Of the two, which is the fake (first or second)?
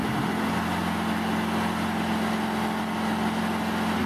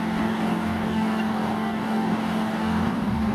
second